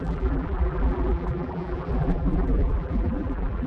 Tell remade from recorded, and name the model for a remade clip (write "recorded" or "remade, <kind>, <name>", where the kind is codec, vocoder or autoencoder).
remade, vocoder, BigVGAN v2